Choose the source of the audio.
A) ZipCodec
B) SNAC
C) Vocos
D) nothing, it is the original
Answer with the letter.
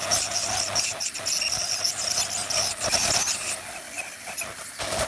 D